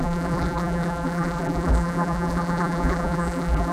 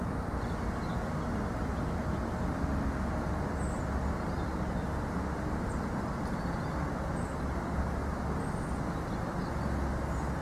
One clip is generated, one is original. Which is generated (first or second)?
first